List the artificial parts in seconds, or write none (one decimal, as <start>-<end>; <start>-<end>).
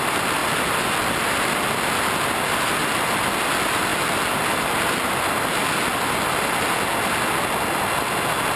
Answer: 3.9-5.4